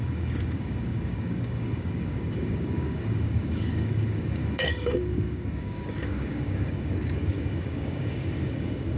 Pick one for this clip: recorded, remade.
remade